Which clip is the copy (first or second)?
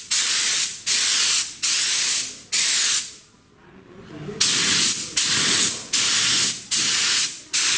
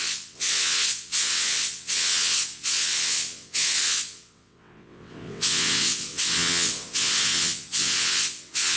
second